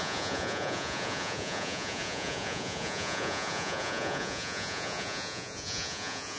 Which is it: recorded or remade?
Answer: remade